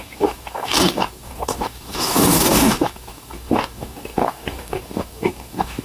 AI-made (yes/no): yes